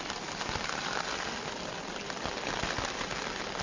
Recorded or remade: recorded